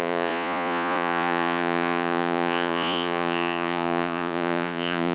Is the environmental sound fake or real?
fake